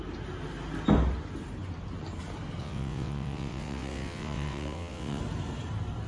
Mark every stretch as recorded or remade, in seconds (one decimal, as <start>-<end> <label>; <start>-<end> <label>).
0.0-2.6 recorded; 2.6-5.2 remade; 5.2-6.1 recorded